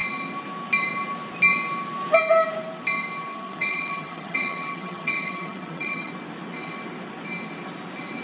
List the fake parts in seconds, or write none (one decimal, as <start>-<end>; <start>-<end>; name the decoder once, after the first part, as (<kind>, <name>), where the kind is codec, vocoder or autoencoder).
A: 3.3-6.1 (vocoder, HiFi-GAN)